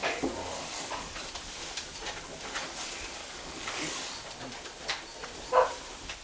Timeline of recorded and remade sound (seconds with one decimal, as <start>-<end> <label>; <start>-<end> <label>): 0.0-1.3 remade; 1.3-3.2 recorded; 3.2-4.2 remade; 4.2-6.2 recorded